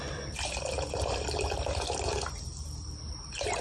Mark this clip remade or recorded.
recorded